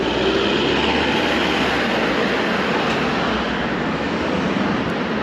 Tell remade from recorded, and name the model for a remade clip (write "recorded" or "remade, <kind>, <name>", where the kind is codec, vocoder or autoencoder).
recorded